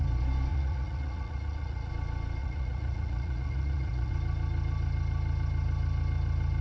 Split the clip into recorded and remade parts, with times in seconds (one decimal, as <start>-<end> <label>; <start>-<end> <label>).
0.0-0.5 recorded; 0.5-1.9 remade; 1.9-2.4 recorded; 2.4-4.1 remade; 4.1-6.6 recorded